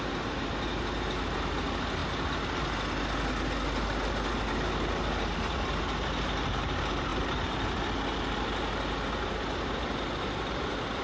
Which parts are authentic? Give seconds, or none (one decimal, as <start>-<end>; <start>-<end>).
0.0-11.0